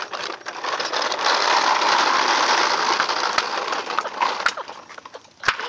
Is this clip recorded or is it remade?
recorded